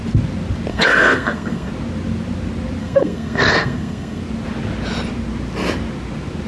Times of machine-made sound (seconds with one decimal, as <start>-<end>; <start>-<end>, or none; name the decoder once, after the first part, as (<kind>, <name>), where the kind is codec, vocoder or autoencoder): 0.7-1.7 (codec, SNAC); 2.8-4.2

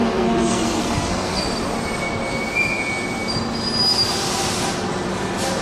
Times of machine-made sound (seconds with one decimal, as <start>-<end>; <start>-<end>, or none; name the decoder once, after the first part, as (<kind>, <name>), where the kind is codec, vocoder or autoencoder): 0.0-1.4 (codec, SNAC)

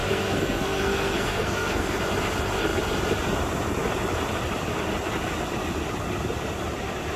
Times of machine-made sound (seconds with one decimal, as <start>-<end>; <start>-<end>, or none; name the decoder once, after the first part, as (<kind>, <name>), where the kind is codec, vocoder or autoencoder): 0.0-2.0 (codec, SNAC)

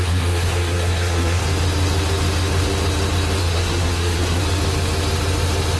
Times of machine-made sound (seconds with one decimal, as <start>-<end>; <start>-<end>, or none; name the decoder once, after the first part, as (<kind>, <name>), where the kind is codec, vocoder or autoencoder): 0.0-1.4 (codec, SNAC); 3.4-4.4

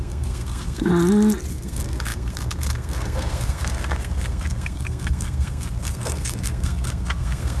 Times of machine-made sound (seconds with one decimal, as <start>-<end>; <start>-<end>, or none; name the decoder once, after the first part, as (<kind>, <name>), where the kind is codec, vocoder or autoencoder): 0.0-0.9 (codec, SNAC); 1.5-7.6

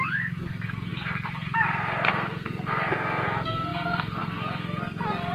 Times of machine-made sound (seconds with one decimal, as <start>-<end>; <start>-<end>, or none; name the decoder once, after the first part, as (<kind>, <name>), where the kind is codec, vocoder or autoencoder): 0.0-5.3 (codec, SNAC)

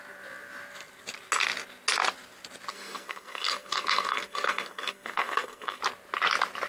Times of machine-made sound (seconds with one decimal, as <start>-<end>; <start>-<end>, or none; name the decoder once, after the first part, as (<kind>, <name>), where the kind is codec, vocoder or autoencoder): 2.7-5.8 (codec, SNAC)